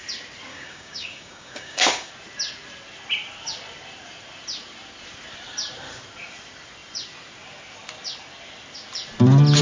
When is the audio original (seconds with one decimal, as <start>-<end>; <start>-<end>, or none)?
0.0-0.5; 2.1-9.6